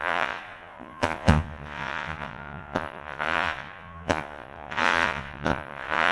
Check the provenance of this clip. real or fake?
fake